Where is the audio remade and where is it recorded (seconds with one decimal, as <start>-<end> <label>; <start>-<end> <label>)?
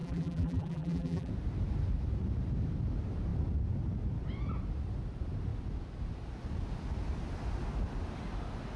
0.0-1.3 remade; 1.3-8.8 recorded